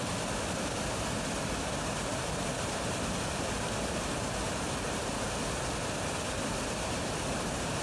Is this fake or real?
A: real